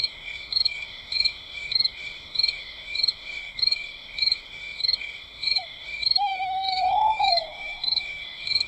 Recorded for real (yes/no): no